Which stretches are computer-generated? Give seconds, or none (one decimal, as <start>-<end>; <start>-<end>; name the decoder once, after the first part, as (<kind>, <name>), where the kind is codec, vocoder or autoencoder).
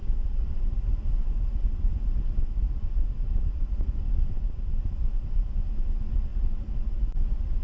none